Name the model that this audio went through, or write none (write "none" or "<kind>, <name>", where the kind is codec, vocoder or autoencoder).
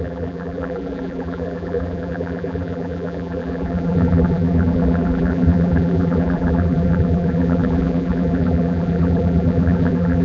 vocoder, BigVGAN v2